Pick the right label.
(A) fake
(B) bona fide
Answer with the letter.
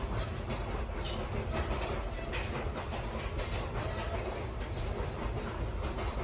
B